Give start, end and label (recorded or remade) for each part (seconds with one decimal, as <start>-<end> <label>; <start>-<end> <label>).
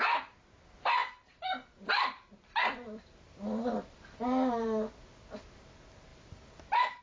0.0-1.0 recorded; 1.0-4.9 remade; 4.9-6.1 recorded; 6.1-7.0 remade